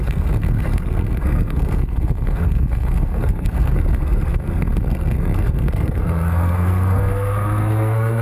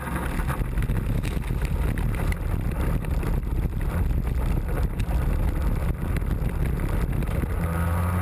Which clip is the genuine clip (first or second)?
second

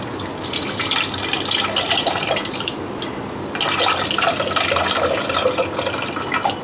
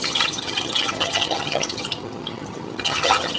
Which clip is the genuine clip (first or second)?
first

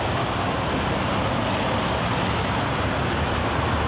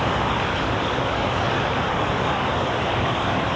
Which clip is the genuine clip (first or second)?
first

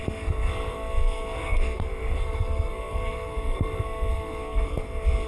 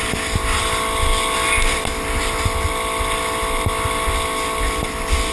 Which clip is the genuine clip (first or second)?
second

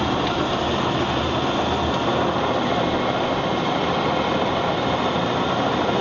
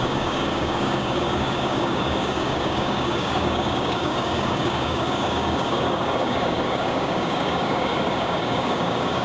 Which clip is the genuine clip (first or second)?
first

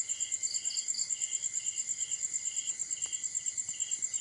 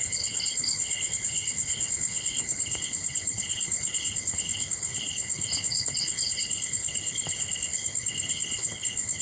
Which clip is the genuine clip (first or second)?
first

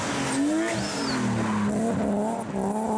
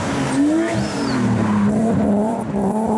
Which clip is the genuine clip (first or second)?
first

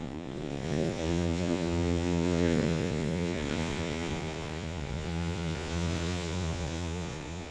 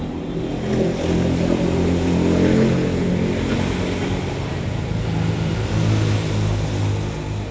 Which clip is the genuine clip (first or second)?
second